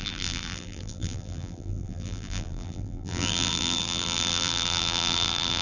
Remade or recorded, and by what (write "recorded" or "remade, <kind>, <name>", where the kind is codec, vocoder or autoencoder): remade, vocoder, BigVGAN v2